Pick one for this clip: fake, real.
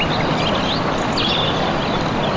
real